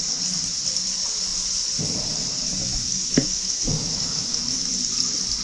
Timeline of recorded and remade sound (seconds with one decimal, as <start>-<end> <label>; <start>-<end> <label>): 0.0-2.6 recorded; 2.6-4.6 remade; 4.6-5.4 recorded